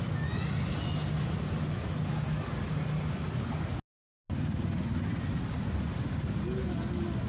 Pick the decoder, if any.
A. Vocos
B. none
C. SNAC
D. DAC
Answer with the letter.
B